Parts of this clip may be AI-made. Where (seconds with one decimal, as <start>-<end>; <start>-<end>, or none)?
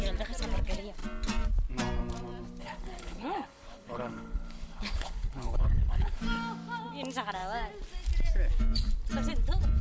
2.6-6.2